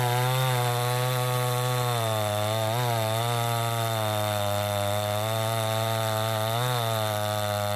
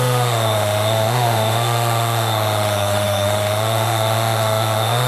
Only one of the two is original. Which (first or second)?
first